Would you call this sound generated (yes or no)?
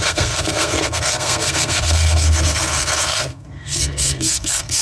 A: yes